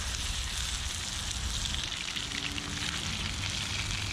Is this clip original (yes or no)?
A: yes